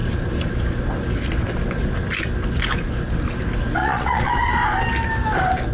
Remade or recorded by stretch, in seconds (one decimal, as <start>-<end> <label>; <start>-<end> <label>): 0.0-3.8 recorded; 3.8-4.5 remade; 4.5-5.7 recorded